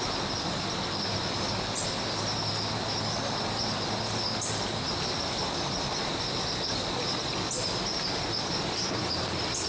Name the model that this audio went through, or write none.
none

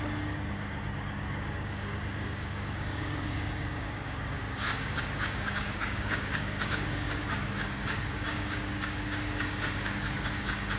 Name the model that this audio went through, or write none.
codec, DAC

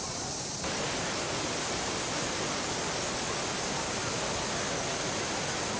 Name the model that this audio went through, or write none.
none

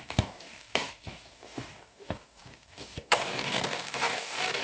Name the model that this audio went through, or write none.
codec, DAC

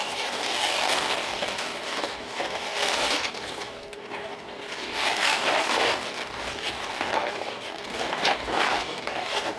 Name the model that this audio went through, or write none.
codec, DAC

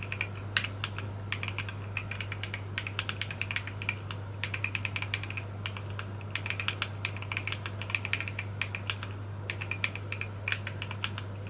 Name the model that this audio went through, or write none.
none